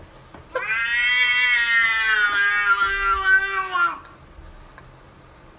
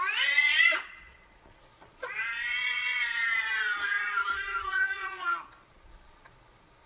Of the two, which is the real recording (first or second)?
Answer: first